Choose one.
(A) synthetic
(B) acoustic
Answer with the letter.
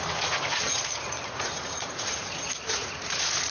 A